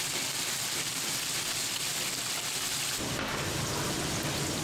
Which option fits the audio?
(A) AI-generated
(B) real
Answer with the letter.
B